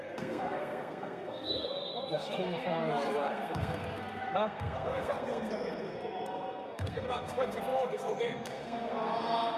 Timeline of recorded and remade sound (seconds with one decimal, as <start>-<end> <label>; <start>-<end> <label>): 0.0-9.6 remade